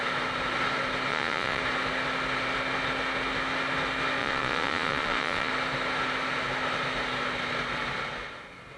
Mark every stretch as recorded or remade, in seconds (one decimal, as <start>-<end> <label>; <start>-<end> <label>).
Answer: 0.0-1.1 recorded; 1.1-1.6 remade; 1.6-4.2 recorded; 4.2-5.5 remade; 5.5-8.8 recorded